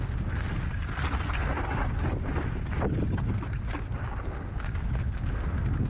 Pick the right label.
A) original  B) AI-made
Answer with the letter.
A